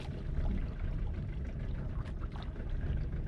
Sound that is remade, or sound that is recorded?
recorded